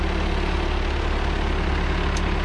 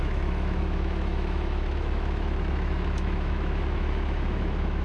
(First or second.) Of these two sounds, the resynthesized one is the second